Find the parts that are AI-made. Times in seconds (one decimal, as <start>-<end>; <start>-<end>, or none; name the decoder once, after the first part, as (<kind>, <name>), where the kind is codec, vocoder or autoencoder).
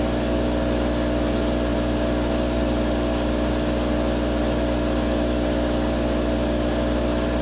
none